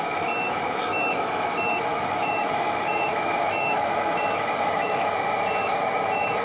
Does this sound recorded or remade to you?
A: remade